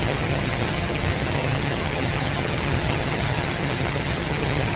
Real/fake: fake